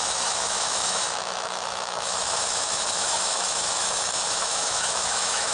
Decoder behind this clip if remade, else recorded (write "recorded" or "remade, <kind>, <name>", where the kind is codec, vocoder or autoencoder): remade, autoencoder, DAC-VAE